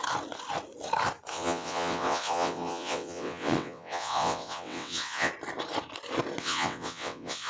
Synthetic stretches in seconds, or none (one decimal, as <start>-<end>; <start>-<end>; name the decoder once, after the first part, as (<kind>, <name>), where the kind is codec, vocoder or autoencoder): 1.3-5.3 (vocoder, WaveNeXt); 6.4-7.5